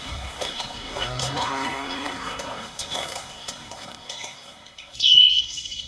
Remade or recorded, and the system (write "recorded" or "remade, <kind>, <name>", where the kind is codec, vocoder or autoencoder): remade, codec, SNAC